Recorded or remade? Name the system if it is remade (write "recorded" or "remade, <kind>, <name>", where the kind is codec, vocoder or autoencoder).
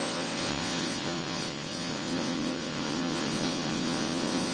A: remade, vocoder, WaveNeXt